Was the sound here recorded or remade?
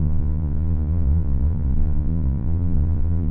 remade